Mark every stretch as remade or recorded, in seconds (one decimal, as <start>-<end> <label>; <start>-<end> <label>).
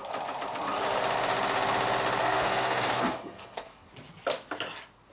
0.0-2.2 recorded; 2.2-3.9 remade; 3.9-5.1 recorded